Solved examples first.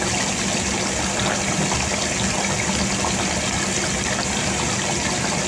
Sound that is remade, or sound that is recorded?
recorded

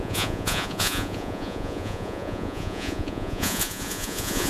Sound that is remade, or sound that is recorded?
remade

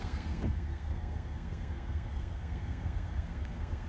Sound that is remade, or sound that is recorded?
remade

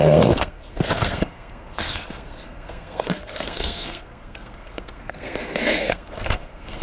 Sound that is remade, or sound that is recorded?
remade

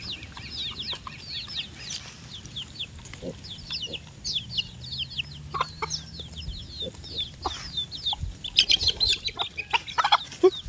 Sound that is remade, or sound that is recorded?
recorded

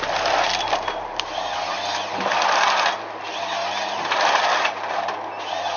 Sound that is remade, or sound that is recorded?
recorded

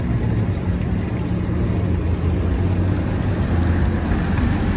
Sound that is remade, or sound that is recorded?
recorded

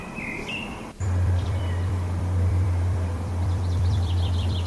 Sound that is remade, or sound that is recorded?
remade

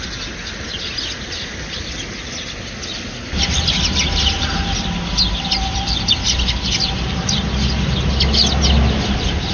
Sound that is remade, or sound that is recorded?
recorded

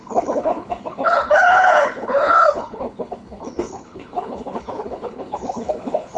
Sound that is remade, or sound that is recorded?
remade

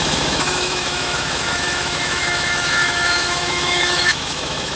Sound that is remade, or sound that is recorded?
remade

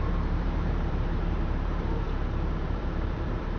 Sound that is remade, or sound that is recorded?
remade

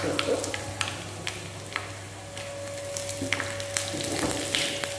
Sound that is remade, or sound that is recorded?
recorded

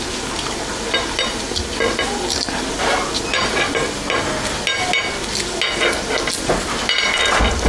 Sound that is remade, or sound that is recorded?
recorded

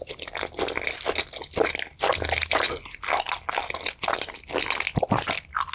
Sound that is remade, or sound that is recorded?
recorded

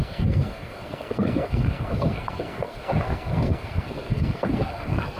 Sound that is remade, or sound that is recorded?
remade